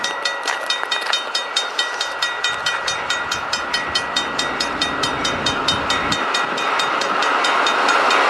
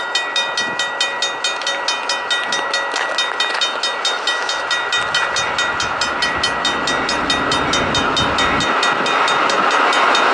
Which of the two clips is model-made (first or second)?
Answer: first